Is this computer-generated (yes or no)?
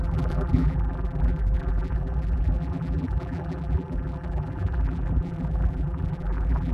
yes